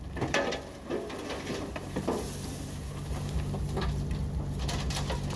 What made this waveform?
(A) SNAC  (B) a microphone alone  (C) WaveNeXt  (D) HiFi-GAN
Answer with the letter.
B